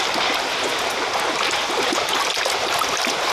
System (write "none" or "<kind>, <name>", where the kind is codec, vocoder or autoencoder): none